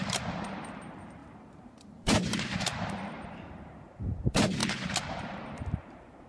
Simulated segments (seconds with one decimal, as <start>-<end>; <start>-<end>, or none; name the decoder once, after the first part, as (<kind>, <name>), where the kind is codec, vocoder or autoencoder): 0.0-4.6 (vocoder, BigVGAN v2); 5.1-6.3